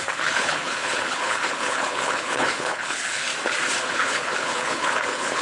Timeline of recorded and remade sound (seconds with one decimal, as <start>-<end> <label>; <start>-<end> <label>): 0.0-3.3 remade; 3.3-3.9 recorded; 3.9-5.4 remade

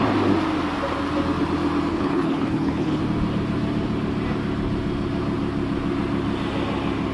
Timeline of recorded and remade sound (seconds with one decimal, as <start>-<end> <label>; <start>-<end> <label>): 0.0-1.9 recorded; 1.9-3.0 remade; 3.0-7.1 recorded

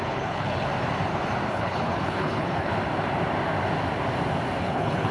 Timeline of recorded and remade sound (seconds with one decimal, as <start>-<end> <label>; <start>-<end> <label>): 0.0-0.7 remade; 0.7-1.5 recorded; 1.5-2.7 remade; 2.7-4.6 recorded; 4.6-5.1 remade